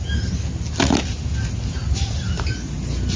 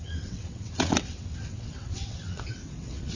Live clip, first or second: first